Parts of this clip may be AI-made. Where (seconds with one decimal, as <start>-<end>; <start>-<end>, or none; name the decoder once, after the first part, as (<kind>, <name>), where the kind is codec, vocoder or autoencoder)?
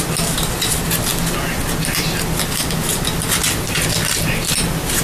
none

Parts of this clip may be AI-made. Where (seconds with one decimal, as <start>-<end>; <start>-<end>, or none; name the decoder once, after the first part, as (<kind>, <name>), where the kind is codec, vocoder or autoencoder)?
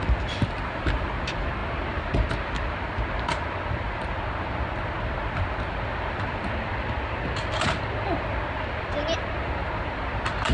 none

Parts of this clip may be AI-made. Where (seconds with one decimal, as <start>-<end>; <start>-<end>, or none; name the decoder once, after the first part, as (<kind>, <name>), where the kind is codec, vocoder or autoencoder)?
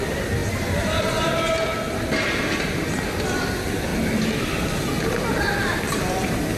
none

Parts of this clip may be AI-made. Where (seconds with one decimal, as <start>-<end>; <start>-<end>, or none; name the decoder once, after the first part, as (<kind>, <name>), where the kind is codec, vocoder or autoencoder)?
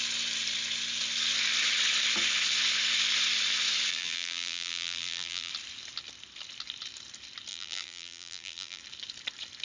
3.9-5.5 (vocoder, BigVGAN v2); 7.5-8.8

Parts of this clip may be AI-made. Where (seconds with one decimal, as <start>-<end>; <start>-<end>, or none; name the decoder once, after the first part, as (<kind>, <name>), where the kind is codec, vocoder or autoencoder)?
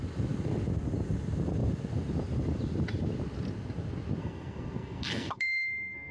4.2-6.1 (codec, SNAC)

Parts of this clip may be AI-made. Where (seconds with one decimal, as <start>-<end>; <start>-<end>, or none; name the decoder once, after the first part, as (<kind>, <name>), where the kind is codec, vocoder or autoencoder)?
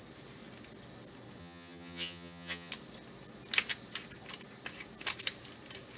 1.4-2.7 (vocoder, HiFi-GAN)